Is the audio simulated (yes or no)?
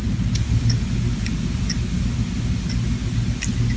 no